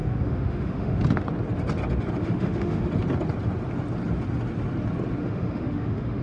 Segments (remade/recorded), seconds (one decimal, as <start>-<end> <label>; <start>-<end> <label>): 0.0-1.0 remade; 1.0-2.2 recorded; 2.2-2.9 remade; 2.9-5.2 recorded; 5.2-6.2 remade